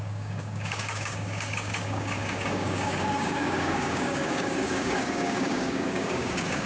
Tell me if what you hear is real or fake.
fake